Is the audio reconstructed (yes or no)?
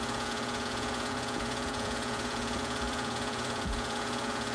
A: yes